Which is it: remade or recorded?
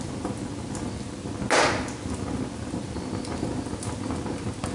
recorded